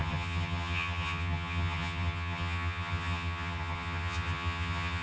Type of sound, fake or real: fake